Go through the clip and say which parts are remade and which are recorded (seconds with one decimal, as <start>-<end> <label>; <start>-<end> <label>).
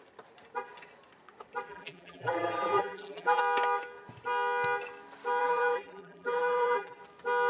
0.0-1.7 recorded; 1.7-3.4 remade; 3.4-5.4 recorded; 5.4-7.0 remade; 7.0-7.5 recorded